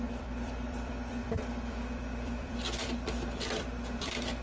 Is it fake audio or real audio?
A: fake